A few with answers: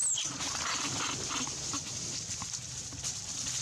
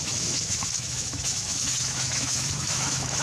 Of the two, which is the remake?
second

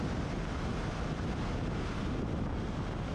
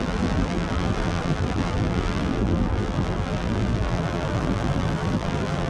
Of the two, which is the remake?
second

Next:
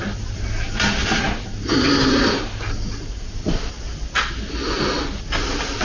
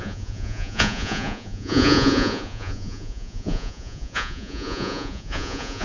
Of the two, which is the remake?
second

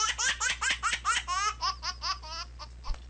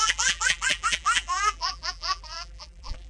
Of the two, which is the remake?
second